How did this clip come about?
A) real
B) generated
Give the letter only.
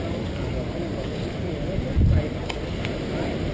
A